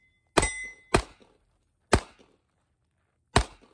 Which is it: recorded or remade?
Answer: recorded